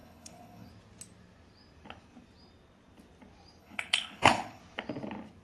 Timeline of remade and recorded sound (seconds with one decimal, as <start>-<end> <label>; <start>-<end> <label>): 0.0-0.7 remade; 0.7-3.6 recorded; 3.6-4.6 remade; 4.6-5.4 recorded

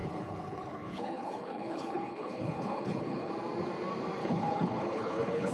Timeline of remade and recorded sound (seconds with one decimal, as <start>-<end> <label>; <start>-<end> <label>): 0.0-3.3 remade; 3.3-4.2 recorded; 4.2-5.5 remade

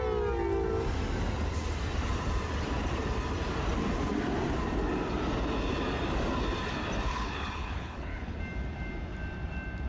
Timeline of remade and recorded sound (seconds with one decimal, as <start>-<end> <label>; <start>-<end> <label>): 0.0-7.1 recorded; 7.1-8.4 remade; 8.4-9.9 recorded

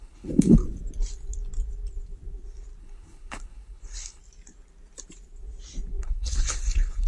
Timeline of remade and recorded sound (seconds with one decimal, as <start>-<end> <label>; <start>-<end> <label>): 0.0-0.6 remade; 0.6-2.8 recorded; 2.8-4.2 remade; 4.2-6.0 recorded; 6.0-7.1 remade

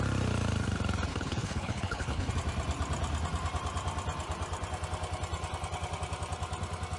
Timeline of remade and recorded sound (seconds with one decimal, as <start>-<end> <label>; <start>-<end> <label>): 0.0-1.1 recorded; 1.1-2.3 remade; 2.3-7.0 recorded

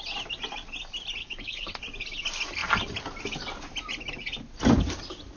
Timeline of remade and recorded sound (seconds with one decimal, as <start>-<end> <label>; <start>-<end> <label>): 0.0-1.2 recorded; 1.2-1.7 remade; 1.7-5.4 recorded

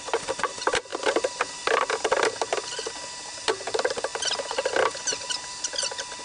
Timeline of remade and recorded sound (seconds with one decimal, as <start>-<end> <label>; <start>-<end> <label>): 0.0-6.2 recorded

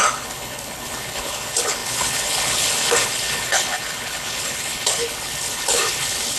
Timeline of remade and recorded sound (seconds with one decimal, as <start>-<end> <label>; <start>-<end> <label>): 0.0-6.4 remade